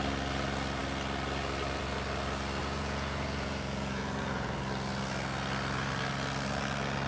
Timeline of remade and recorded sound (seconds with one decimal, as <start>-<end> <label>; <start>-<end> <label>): 0.0-2.6 recorded; 2.6-4.6 remade; 4.6-7.1 recorded